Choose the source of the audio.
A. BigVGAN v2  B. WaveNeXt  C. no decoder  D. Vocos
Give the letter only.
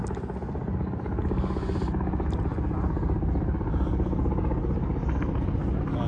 C